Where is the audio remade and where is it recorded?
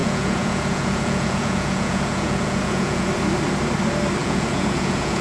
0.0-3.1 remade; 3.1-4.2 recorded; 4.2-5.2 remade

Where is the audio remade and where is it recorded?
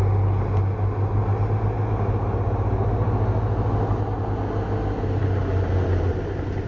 0.0-6.7 recorded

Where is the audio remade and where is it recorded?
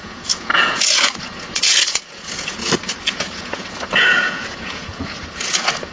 0.0-2.6 remade; 2.6-3.1 recorded; 3.1-5.9 remade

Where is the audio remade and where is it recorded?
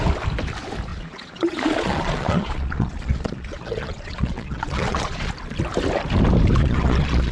0.0-0.9 recorded; 0.9-5.3 remade; 5.3-6.6 recorded; 6.6-7.3 remade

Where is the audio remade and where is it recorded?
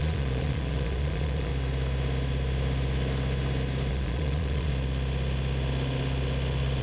0.0-1.5 remade; 1.5-3.9 recorded; 3.9-4.7 remade; 4.7-6.8 recorded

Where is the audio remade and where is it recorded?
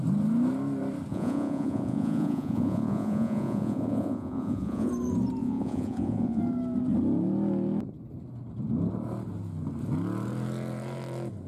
0.0-1.1 recorded; 1.1-4.9 remade; 4.9-5.4 recorded; 5.4-6.4 remade; 6.4-11.5 recorded